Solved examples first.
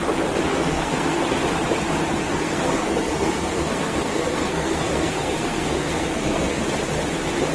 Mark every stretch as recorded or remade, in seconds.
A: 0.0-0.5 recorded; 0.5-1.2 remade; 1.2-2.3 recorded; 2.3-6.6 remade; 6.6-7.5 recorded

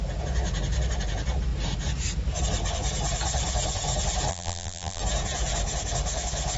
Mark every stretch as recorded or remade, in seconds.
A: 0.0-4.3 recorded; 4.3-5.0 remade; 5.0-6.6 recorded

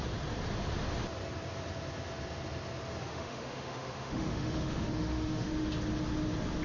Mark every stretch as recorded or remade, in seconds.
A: 0.0-3.1 recorded; 3.1-5.5 remade; 5.5-6.6 recorded